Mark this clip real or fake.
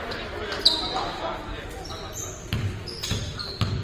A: real